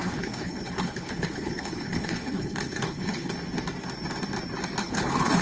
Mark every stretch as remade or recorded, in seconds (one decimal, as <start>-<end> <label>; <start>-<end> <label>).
0.0-3.3 remade; 3.3-4.8 recorded; 4.8-5.4 remade